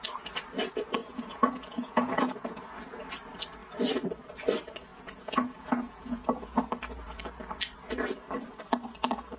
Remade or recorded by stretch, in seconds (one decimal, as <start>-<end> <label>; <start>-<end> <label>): 0.0-1.0 recorded; 1.0-2.6 remade; 2.6-4.9 recorded; 4.9-6.6 remade; 6.6-9.4 recorded